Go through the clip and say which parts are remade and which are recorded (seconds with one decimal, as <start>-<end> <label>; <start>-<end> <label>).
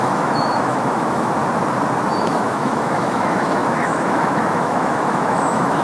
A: 0.0-1.4 remade; 1.4-2.2 recorded; 2.2-5.8 remade